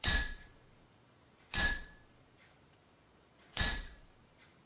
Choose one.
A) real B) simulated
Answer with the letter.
B